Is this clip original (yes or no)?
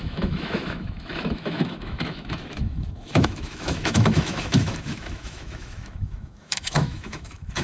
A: no